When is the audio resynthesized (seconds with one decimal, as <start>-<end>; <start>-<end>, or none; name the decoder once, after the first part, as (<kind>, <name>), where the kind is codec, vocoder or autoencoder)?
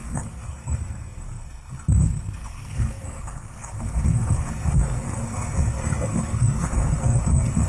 0.0-7.7 (codec, SNAC)